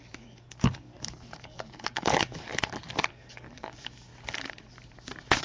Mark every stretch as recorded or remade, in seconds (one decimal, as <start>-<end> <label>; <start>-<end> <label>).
0.0-0.9 remade; 0.9-1.4 recorded; 1.4-2.5 remade; 2.5-3.1 recorded; 3.1-4.1 remade; 4.1-5.4 recorded